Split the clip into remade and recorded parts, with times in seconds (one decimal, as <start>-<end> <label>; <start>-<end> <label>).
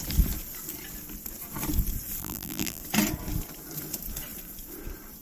0.0-2.2 recorded; 2.2-2.8 remade; 2.8-5.2 recorded